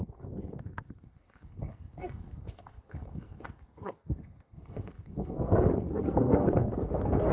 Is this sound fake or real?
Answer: fake